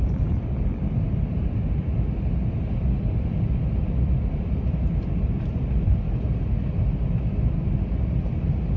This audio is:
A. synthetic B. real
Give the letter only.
B